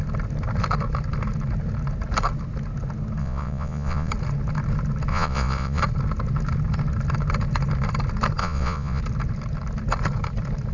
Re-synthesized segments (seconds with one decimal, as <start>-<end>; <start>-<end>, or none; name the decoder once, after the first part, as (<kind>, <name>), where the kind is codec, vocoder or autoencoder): 3.2-4.1 (vocoder, Vocos); 5.1-5.8; 8.4-9.0